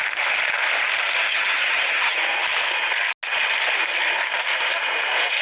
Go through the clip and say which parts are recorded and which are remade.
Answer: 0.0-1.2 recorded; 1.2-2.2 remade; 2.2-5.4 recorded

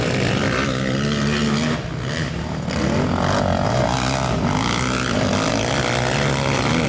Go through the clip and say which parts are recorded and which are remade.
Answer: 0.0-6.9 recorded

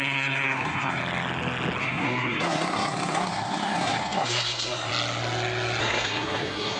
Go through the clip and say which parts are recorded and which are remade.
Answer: 0.0-1.0 remade; 1.0-1.8 recorded; 1.8-4.9 remade; 4.9-5.8 recorded; 5.8-6.8 remade

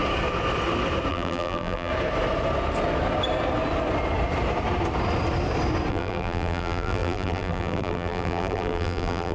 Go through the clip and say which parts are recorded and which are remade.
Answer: 0.0-1.1 recorded; 1.1-1.9 remade; 1.9-5.9 recorded; 5.9-9.3 remade

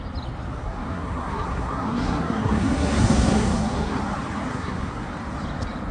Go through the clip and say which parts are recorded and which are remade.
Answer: 0.0-0.5 recorded; 0.5-4.0 remade; 4.0-4.5 recorded; 4.5-5.1 remade; 5.1-5.9 recorded

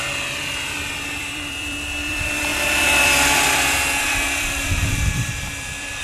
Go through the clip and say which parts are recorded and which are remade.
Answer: 0.0-6.0 remade

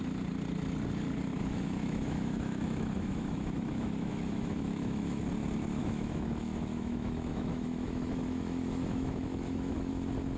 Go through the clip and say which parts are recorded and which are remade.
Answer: 0.0-1.3 recorded; 1.3-5.2 remade; 5.2-5.8 recorded; 5.8-9.9 remade; 9.9-10.4 recorded

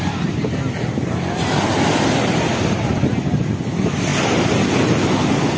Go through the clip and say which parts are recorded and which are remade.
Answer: 0.0-5.6 recorded